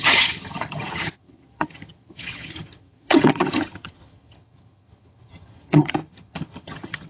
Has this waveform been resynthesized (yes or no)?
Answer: yes